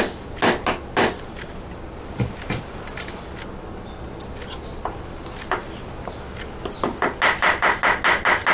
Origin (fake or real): real